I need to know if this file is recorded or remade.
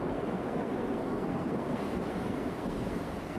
remade